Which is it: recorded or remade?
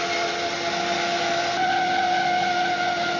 recorded